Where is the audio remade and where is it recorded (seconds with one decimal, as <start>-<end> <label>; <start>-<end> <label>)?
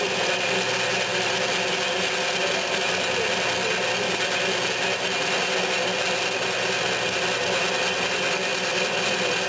0.0-9.5 recorded